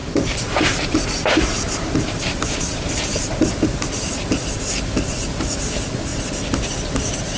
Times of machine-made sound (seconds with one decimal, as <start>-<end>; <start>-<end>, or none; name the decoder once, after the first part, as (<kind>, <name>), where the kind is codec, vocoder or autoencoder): 0.0-3.5 (vocoder, BigVGAN v2)